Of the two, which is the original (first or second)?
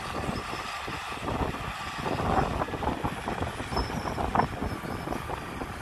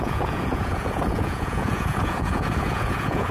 first